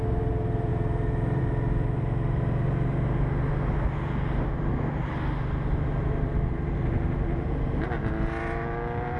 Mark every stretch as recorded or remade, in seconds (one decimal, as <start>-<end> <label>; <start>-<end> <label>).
0.0-9.2 recorded